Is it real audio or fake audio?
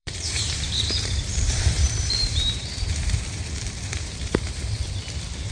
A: fake